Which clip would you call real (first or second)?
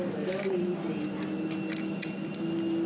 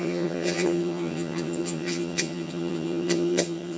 first